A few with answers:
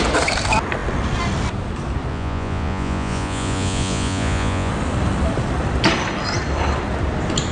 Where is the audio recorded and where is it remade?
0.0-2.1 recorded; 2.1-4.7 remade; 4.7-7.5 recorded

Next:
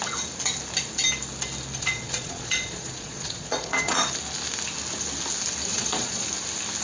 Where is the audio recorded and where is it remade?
0.0-1.8 recorded; 1.8-4.0 remade; 4.0-5.7 recorded; 5.7-6.3 remade; 6.3-6.8 recorded

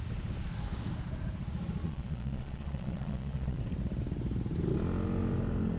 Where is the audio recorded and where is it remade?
0.0-1.8 recorded; 1.8-3.6 remade; 3.6-5.8 recorded

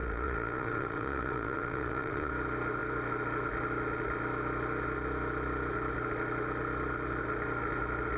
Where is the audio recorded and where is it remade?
0.0-2.3 remade; 2.3-8.2 recorded

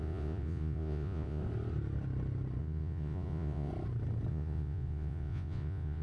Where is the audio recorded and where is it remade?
0.0-1.4 remade; 1.4-2.6 recorded; 2.6-3.7 remade; 3.7-4.3 recorded; 4.3-6.0 remade

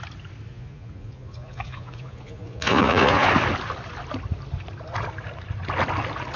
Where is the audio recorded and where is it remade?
0.0-0.5 recorded; 0.5-3.3 remade; 3.3-6.4 recorded

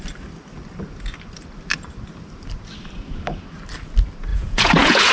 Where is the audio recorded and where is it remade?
0.0-4.3 recorded; 4.3-5.1 remade